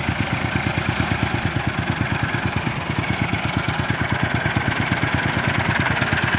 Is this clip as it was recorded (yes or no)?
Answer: yes